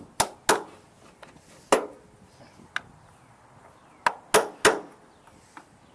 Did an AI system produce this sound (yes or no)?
no